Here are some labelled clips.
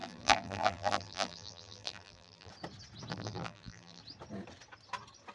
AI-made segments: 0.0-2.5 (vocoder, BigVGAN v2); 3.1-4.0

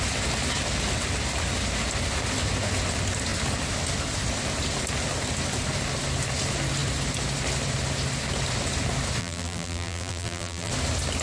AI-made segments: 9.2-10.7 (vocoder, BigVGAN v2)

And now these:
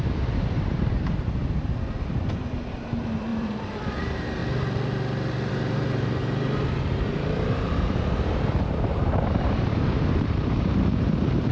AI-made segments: 0.0-4.4 (vocoder, BigVGAN v2); 5.5-11.5

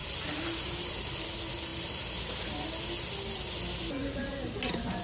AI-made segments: 0.0-0.9 (vocoder, BigVGAN v2)

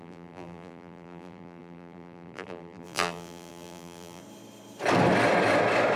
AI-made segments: 0.0-4.2 (vocoder, BigVGAN v2)

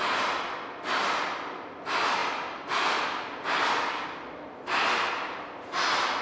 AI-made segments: 2.2-2.8 (vocoder, BigVGAN v2)